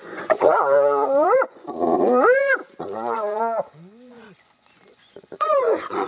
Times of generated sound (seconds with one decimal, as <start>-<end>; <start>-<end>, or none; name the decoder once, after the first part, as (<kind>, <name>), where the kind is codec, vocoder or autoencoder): 0.0-6.1 (vocoder, Vocos)